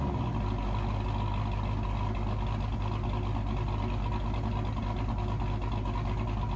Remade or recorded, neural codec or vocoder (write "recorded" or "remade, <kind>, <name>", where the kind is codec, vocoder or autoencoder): recorded